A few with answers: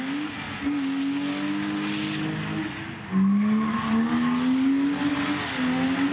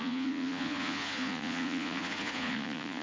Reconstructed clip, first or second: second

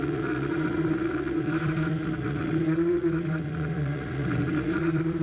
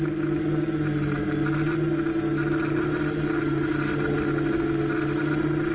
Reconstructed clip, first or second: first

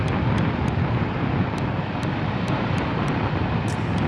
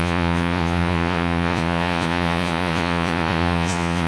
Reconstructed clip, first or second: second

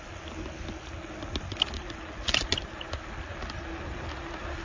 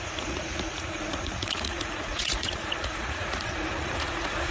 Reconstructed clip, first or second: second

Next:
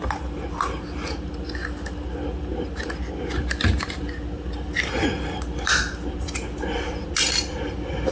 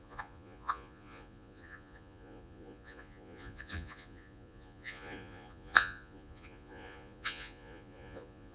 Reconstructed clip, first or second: second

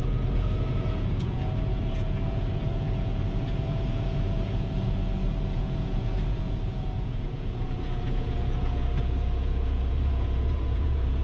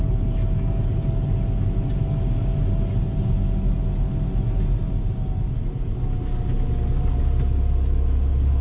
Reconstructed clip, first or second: first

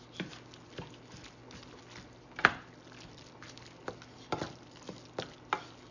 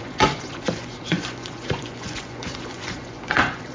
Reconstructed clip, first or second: second